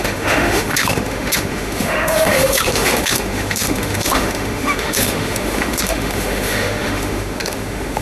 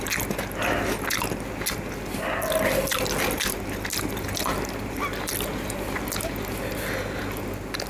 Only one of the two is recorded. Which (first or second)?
second